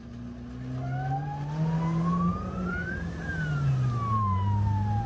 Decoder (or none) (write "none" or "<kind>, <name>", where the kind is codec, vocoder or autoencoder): none